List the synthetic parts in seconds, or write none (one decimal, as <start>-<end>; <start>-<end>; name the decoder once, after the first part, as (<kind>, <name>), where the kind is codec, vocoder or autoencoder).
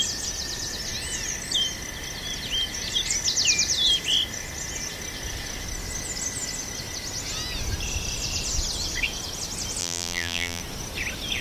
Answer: 9.8-10.6 (vocoder, BigVGAN v2)